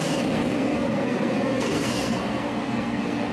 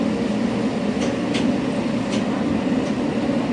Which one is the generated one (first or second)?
first